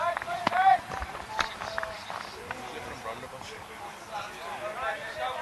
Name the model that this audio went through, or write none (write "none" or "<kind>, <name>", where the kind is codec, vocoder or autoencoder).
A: none